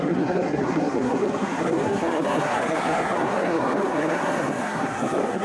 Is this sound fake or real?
fake